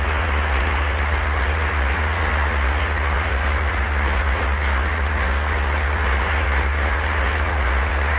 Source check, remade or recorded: remade